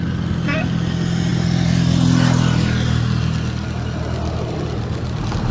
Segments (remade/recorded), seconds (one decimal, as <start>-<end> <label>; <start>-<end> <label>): 0.0-5.5 recorded